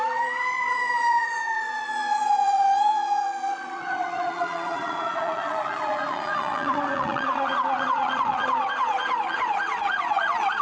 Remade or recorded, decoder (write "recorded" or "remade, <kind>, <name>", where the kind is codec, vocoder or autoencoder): remade, vocoder, Vocos